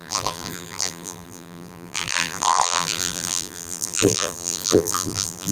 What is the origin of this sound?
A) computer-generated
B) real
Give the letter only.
A